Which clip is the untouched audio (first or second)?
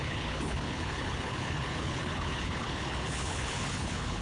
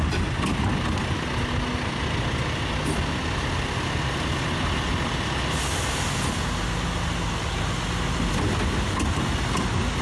second